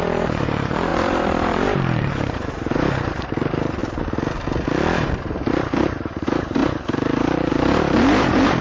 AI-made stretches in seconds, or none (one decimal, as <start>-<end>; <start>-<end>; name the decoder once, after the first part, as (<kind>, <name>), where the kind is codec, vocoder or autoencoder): 0.0-3.8 (vocoder, BigVGAN v2); 5.5-6.6; 7.5-8.6